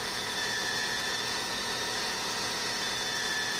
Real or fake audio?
fake